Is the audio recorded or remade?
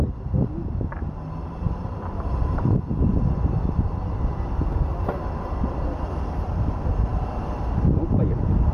remade